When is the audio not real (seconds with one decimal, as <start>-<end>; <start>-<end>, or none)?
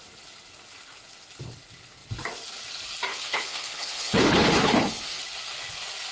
3.1-5.2